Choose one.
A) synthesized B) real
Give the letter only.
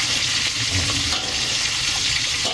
B